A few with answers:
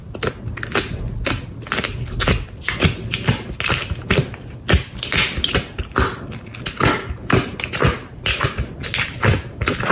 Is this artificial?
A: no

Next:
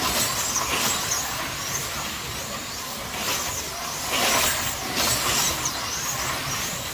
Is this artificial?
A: no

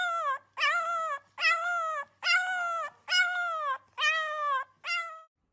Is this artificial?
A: no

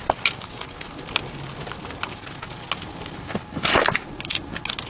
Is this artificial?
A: no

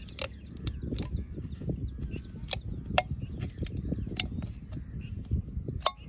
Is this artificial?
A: no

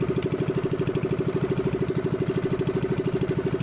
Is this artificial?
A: no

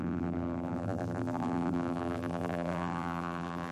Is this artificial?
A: yes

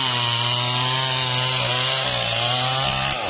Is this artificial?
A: no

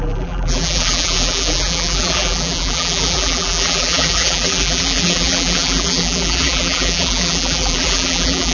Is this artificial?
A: yes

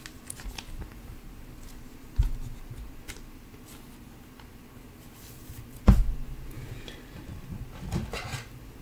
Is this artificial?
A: no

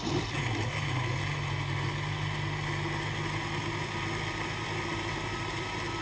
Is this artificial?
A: no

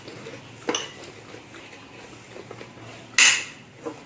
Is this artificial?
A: no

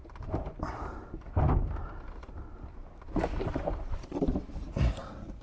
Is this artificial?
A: yes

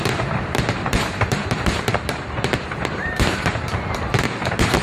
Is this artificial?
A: yes